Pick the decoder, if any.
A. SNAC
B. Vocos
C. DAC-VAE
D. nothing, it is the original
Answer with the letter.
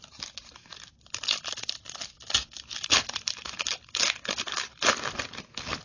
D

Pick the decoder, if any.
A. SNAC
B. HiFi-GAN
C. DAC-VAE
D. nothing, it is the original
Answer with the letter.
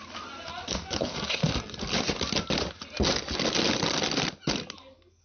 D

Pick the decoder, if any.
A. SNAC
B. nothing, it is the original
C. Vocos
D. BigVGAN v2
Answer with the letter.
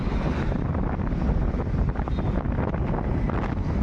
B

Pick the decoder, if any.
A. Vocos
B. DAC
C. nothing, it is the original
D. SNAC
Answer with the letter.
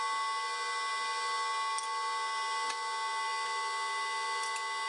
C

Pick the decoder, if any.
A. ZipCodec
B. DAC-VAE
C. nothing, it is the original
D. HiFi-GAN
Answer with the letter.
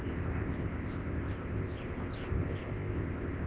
A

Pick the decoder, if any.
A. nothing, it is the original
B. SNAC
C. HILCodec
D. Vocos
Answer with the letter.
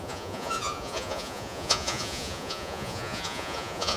D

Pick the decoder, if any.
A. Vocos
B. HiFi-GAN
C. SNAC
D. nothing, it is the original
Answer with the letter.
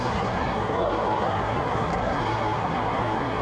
C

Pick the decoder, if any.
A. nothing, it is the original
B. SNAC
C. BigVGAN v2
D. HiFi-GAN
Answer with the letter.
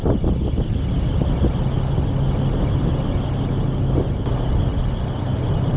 A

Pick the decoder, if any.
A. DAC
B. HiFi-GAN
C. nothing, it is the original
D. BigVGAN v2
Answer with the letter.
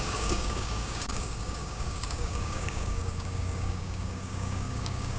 A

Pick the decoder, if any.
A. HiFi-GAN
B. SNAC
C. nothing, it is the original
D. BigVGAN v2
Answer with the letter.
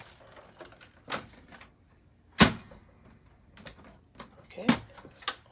C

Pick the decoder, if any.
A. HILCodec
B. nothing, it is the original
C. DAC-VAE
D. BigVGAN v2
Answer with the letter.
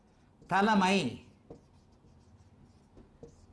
B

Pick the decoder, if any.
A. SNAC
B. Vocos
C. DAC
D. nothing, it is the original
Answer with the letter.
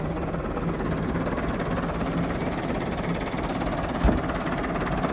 D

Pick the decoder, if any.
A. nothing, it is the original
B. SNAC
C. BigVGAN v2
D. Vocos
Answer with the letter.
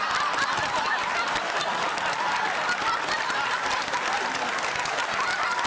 A